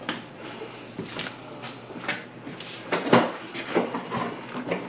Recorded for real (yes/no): no